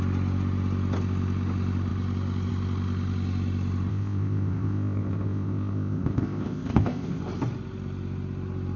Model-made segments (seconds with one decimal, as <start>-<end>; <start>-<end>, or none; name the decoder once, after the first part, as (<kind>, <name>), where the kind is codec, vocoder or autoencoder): 3.9-7.2 (codec, ZipCodec)

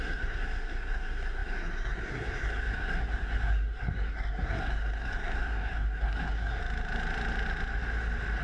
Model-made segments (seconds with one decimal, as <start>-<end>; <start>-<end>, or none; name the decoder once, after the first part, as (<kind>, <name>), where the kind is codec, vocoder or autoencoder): 0.0-6.6 (codec, SNAC)

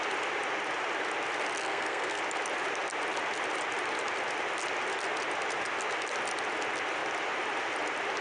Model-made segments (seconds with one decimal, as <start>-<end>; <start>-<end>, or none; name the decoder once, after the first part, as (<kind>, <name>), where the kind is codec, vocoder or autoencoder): 1.6-2.2 (codec, SNAC)

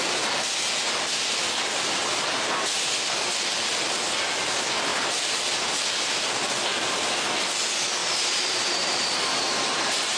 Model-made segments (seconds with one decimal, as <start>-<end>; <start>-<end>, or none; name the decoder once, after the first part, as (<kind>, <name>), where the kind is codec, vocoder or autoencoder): 8.0-10.2 (vocoder, BigVGAN v2)

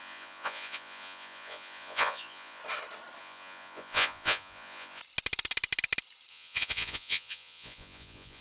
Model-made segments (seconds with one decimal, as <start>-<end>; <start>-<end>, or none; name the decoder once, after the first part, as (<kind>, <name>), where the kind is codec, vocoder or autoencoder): 0.0-2.6 (vocoder, Vocos); 3.2-5.0; 6.3-8.4

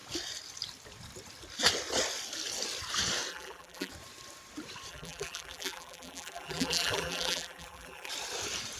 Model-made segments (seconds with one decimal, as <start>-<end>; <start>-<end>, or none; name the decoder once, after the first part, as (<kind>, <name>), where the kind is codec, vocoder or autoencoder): 3.3-3.9 (vocoder, BigVGAN v2); 4.9-8.1